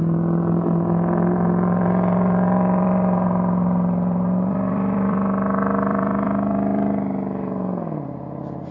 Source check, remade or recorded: remade